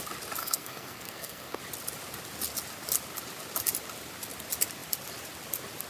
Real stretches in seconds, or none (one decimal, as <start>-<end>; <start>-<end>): 0.0-0.4; 1.6-5.9